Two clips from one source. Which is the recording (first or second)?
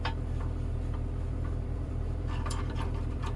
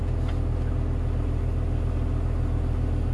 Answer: second